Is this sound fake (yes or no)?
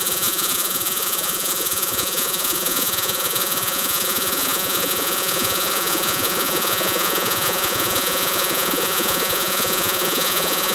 yes